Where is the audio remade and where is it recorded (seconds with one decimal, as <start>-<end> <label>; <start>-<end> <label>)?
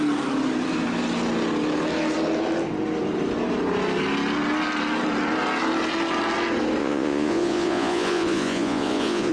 0.0-6.8 recorded; 6.8-9.3 remade